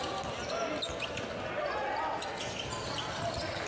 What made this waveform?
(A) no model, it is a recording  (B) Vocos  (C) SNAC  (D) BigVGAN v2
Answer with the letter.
A